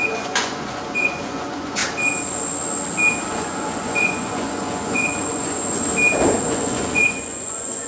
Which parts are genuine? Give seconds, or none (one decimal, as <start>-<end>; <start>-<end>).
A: 1.8-3.3; 5.9-6.4